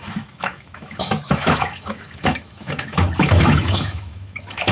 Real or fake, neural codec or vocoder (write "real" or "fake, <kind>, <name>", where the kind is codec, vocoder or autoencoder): fake, autoencoder, DAC-VAE